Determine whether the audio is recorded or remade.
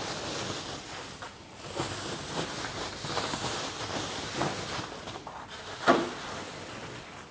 recorded